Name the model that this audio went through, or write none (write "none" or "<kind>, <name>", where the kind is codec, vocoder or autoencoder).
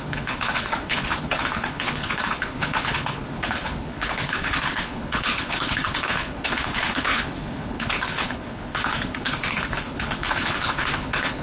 codec, HILCodec